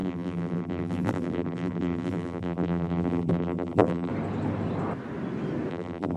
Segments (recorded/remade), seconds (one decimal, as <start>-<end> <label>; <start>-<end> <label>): 0.0-4.1 remade; 4.1-5.7 recorded; 5.7-6.2 remade